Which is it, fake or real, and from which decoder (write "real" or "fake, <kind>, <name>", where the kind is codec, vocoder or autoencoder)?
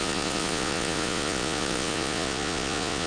fake, vocoder, Vocos